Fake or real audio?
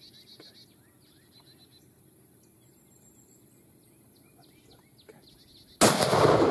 real